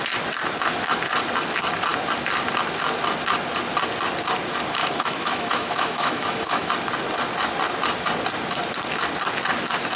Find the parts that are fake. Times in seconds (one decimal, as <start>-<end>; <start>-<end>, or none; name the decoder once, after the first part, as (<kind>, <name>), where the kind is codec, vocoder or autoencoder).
4.8-6.7 (autoencoder, DAC-VAE)